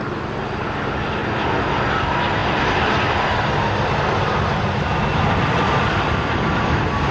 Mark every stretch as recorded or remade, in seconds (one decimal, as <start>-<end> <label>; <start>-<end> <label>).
0.0-7.1 recorded